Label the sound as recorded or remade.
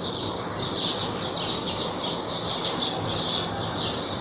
recorded